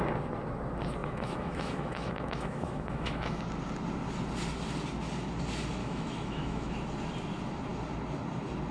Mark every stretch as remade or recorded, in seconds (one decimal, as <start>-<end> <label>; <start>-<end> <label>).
0.0-1.0 recorded; 1.0-3.4 remade; 3.4-5.8 recorded; 5.8-6.7 remade; 6.7-8.7 recorded